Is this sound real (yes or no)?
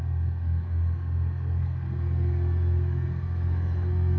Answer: no